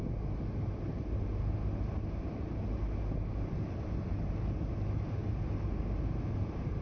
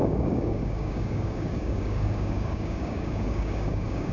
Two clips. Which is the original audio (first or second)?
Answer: first